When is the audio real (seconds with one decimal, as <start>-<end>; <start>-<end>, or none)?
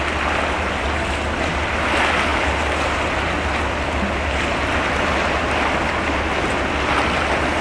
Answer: 0.0-7.6